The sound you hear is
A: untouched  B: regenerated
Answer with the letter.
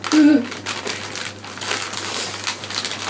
A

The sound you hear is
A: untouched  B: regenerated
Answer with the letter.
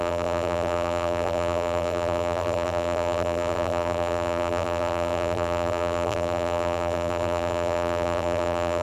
B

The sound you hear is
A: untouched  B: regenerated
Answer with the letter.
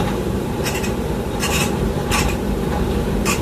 B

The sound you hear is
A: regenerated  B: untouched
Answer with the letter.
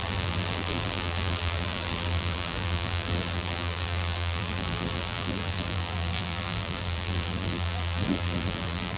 A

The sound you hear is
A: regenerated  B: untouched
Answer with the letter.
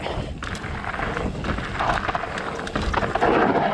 B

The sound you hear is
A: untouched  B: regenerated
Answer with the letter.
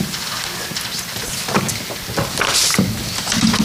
A